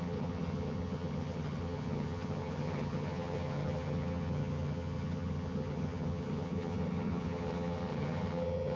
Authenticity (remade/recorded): remade